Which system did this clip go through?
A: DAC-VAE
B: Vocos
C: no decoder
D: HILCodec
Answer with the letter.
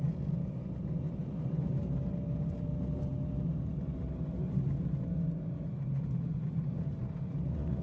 C